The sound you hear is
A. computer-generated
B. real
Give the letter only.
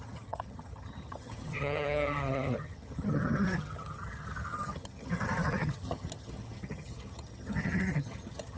A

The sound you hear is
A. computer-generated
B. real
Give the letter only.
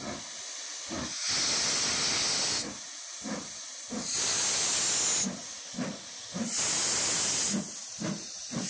B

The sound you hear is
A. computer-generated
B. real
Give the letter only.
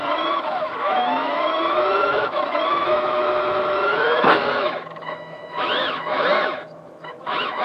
A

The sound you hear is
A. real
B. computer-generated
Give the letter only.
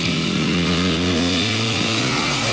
B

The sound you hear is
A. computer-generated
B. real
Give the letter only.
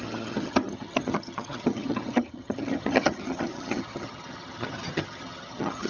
A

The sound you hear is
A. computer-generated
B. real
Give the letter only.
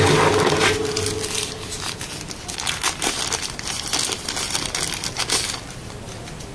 B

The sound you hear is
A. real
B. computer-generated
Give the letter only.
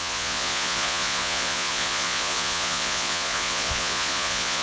B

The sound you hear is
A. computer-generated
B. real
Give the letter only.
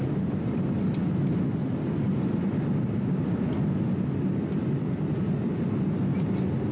B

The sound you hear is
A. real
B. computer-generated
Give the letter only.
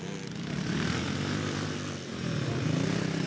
A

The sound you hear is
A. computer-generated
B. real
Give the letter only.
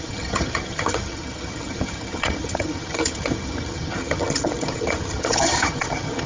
A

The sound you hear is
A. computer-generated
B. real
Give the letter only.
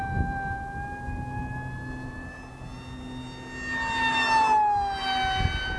B